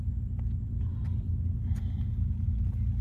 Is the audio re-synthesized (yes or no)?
no